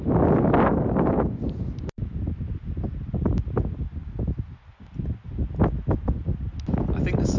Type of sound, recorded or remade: recorded